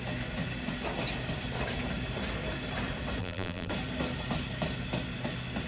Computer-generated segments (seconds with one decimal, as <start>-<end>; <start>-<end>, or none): 3.2-3.7